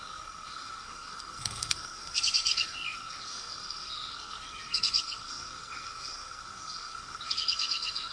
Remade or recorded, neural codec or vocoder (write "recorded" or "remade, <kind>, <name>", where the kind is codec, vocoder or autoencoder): remade, codec, SNAC